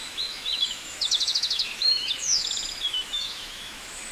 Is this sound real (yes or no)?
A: no